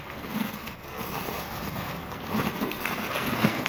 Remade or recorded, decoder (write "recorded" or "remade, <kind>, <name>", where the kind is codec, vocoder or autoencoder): remade, codec, SNAC